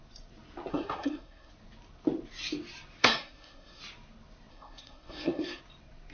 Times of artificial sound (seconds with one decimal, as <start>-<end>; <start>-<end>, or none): 0.7-1.5; 3.0-3.8; 4.5-5.6